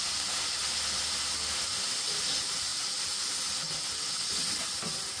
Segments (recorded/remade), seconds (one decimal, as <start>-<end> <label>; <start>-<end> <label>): 0.0-5.2 recorded